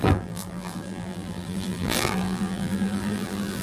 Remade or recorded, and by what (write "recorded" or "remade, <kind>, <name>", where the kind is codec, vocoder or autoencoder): remade, vocoder, BigVGAN v2